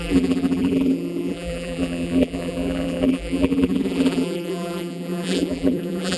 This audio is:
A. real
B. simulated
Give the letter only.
B